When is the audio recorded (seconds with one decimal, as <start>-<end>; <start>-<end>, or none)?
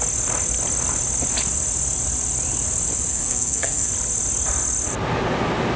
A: 0.0-3.1; 3.9-5.8